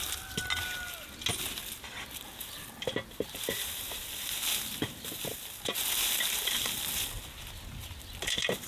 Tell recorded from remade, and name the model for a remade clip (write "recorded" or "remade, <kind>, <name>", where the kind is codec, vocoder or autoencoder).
recorded